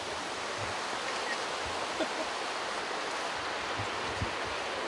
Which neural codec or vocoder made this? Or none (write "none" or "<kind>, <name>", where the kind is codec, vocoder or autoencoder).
none